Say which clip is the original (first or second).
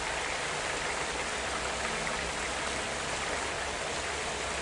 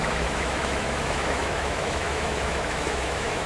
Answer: first